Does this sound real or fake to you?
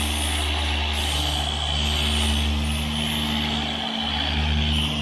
real